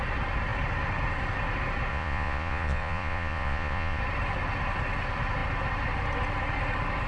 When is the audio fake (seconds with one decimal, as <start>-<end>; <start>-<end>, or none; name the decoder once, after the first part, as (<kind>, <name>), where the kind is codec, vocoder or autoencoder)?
1.9-4.0 (vocoder, Vocos)

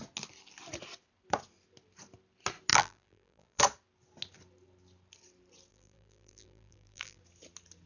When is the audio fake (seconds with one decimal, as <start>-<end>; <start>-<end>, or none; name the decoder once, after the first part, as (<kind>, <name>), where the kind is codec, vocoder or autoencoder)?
2.7-3.6 (vocoder, BigVGAN v2); 5.7-7.2

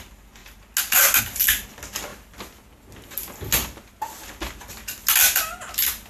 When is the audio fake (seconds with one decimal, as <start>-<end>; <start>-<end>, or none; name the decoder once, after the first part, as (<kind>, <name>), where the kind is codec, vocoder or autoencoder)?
none

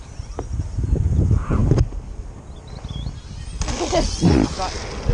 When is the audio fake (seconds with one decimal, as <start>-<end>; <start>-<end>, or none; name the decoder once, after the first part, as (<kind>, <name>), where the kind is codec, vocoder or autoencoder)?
none

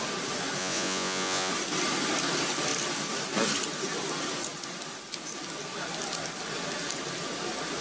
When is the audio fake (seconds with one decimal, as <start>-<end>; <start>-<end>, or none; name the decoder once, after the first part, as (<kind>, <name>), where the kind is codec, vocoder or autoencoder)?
0.6-1.5 (vocoder, Vocos)

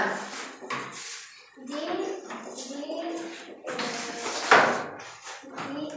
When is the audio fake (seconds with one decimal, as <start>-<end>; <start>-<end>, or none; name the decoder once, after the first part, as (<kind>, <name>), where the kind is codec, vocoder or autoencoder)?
none